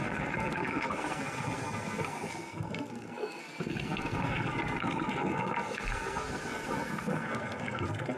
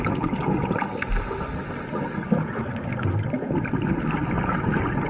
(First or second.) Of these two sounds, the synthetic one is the first